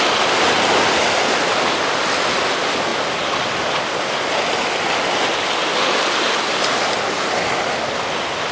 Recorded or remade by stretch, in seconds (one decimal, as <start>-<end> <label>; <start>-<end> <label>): 0.0-8.5 recorded